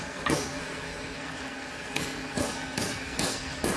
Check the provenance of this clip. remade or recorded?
remade